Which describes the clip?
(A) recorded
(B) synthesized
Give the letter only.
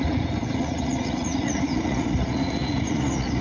B